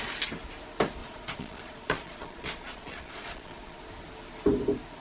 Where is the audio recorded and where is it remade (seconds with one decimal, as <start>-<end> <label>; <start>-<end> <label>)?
0.0-1.0 recorded; 1.0-3.9 remade; 3.9-5.0 recorded